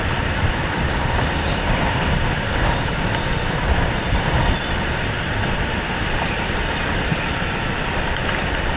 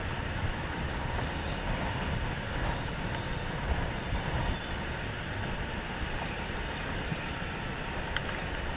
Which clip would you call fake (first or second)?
first